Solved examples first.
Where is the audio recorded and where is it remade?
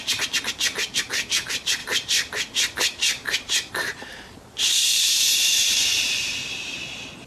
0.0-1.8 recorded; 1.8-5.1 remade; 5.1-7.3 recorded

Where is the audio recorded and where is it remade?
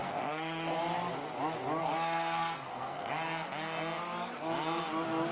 0.0-0.8 remade; 0.8-1.8 recorded; 1.8-3.1 remade; 3.1-5.3 recorded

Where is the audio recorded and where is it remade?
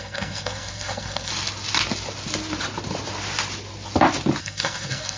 0.0-1.3 remade; 1.3-4.4 recorded; 4.4-5.2 remade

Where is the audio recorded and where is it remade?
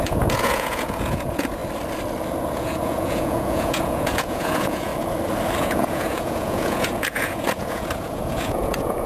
0.0-1.6 remade; 1.6-2.4 recorded; 2.4-4.9 remade; 4.9-5.6 recorded; 5.6-9.1 remade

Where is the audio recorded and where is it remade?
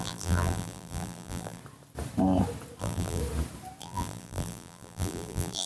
0.0-1.6 remade; 1.6-2.8 recorded; 2.8-3.2 remade; 3.2-3.8 recorded; 3.8-5.7 remade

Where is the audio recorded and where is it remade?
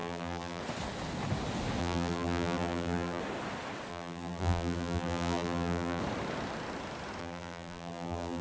0.0-0.6 remade; 0.6-1.8 recorded; 1.8-3.2 remade; 3.2-3.9 recorded; 3.9-6.0 remade; 6.0-7.2 recorded; 7.2-8.4 remade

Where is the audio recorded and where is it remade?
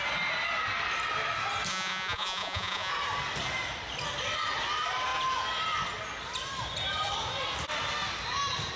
0.0-1.7 recorded; 1.7-2.9 remade; 2.9-8.8 recorded